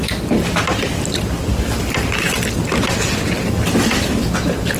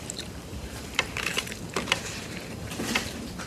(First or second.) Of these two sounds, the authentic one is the first